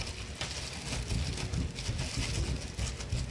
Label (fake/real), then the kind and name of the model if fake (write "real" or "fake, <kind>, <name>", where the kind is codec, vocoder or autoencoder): real